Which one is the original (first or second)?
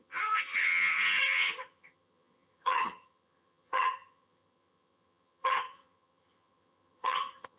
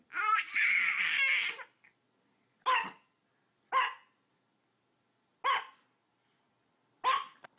second